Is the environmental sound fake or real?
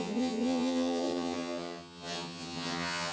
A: fake